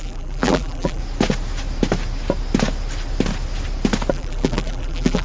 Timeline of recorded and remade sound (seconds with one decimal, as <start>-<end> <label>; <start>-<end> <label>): 0.0-1.0 remade; 1.0-4.1 recorded; 4.1-5.2 remade